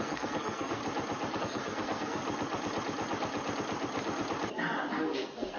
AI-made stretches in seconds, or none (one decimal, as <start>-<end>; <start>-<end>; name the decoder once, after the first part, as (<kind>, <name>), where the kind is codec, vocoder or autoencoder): 0.0-0.8 (codec, SNAC); 1.4-2.2; 4.9-5.6